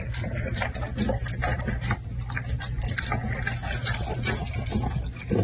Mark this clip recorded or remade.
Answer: recorded